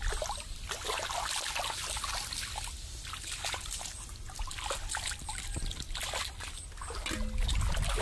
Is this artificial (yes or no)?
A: no